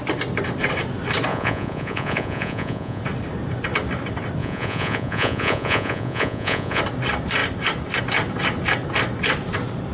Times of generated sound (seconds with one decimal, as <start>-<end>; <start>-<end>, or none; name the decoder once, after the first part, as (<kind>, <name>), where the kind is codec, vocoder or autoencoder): 1.3-3.0 (vocoder, Vocos); 4.4-6.8

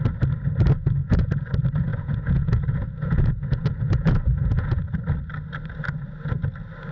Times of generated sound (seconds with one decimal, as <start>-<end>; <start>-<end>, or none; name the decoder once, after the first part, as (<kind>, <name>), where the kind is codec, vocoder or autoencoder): 1.0-1.5 (vocoder, Vocos); 1.9-4.9

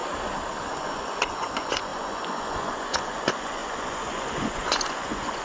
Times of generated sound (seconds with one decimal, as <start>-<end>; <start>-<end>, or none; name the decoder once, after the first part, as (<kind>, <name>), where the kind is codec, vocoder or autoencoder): 0.7-5.4 (vocoder, Vocos)

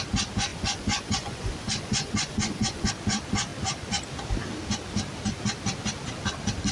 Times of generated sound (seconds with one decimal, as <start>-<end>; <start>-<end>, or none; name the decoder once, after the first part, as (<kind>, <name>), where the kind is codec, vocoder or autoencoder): 0.5-2.9 (vocoder, Vocos)

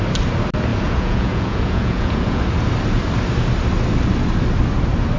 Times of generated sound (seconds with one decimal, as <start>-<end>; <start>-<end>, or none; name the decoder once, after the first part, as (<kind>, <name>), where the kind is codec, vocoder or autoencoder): 0.7-2.4 (vocoder, Vocos)

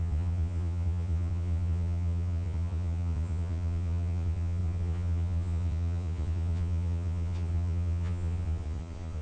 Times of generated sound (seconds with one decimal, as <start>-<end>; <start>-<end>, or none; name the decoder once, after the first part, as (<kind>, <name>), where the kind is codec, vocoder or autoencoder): 0.0-9.2 (vocoder, Vocos)

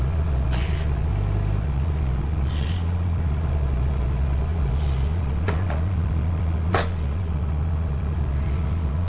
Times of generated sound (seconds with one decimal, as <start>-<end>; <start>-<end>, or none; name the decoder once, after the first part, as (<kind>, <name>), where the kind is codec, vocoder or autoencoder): 0.0-1.1 (vocoder, Vocos); 1.6-9.1